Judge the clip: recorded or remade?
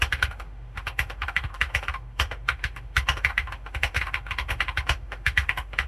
remade